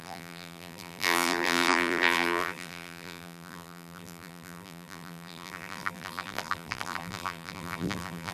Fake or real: fake